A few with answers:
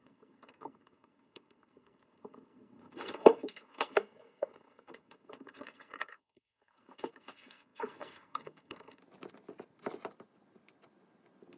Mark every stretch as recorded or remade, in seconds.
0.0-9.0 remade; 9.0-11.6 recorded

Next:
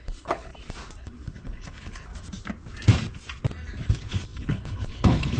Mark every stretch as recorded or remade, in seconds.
0.0-0.5 remade; 0.5-1.0 recorded; 1.0-2.1 remade; 2.1-3.9 recorded; 3.9-5.4 remade

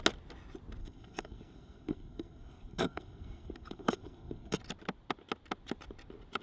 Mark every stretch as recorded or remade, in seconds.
0.0-0.8 recorded; 0.8-4.6 remade; 4.6-6.4 recorded